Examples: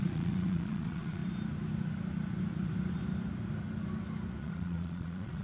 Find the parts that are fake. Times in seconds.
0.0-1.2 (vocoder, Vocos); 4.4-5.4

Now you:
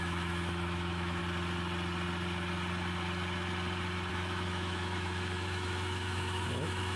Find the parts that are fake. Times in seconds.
0.0-1.2 (autoencoder, DAC-VAE); 4.1-7.0

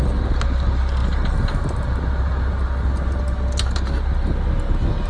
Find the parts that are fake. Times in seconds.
none

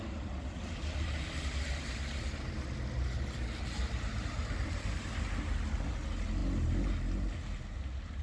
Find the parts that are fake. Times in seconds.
none

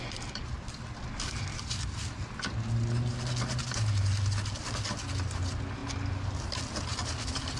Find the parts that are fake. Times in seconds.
6.9-7.6 (vocoder, BigVGAN v2)

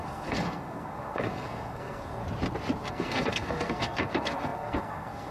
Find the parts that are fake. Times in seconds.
0.0-2.2 (codec, SNAC); 2.9-5.3